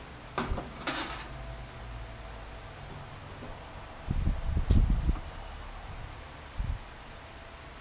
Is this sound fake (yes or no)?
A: no